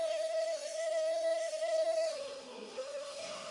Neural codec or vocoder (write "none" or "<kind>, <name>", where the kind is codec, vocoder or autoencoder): codec, SNAC